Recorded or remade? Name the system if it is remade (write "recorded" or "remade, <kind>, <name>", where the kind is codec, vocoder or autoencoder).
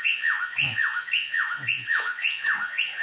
remade, vocoder, Vocos